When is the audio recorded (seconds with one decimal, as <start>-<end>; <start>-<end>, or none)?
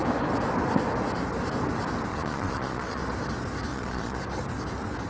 0.0-2.1; 3.0-3.7; 4.2-5.1